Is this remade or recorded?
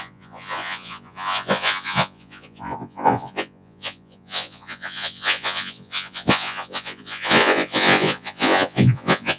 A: remade